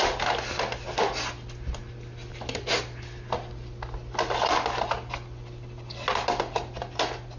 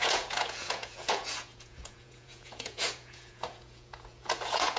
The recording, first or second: first